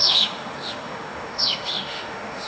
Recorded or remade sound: remade